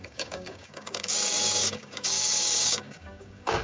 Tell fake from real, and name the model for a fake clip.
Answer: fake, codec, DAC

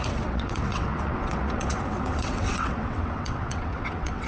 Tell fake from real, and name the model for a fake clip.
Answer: fake, vocoder, WaveNeXt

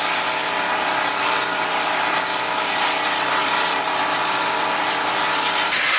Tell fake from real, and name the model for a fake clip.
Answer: fake, vocoder, BigVGAN v2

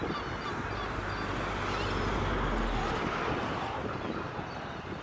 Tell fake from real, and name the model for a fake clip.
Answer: real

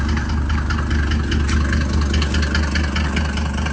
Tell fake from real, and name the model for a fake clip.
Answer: real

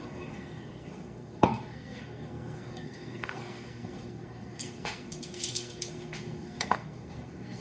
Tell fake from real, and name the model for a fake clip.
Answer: fake, codec, SNAC